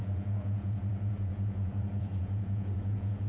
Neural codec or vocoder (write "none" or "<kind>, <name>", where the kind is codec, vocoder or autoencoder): vocoder, Vocos